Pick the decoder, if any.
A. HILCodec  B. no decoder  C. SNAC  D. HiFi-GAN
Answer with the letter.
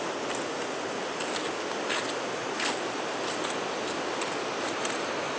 B